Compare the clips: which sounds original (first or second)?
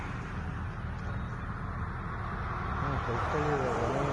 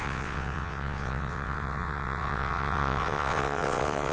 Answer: first